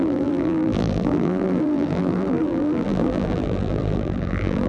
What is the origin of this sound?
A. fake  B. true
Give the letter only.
A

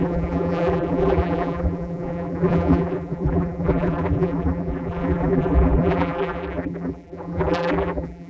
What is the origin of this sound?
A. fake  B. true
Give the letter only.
A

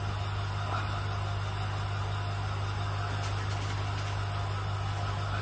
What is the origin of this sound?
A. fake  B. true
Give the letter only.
B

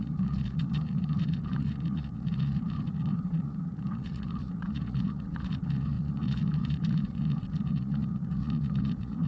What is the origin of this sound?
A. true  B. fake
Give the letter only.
B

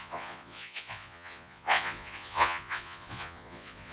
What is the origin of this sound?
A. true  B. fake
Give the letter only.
B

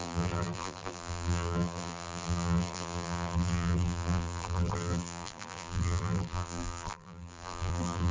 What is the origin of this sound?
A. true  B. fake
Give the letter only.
B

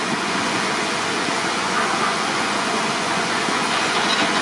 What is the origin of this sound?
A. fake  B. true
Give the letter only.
A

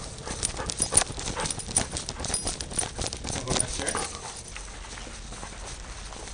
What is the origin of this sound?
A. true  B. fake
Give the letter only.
A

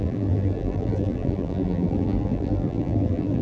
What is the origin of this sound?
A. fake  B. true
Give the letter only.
A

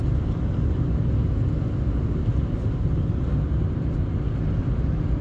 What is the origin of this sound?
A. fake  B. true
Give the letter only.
B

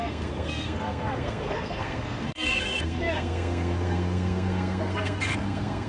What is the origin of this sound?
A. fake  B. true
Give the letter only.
A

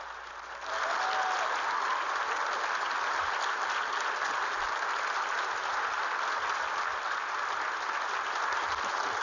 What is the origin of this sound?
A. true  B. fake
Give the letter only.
A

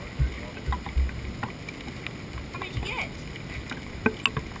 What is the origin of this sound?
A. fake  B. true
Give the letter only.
B